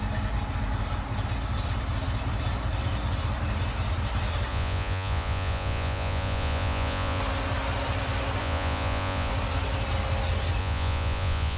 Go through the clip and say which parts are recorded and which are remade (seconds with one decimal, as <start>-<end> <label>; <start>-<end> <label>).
0.0-4.5 recorded; 4.5-7.2 remade; 7.2-8.4 recorded; 8.4-9.3 remade; 9.3-10.6 recorded; 10.6-11.6 remade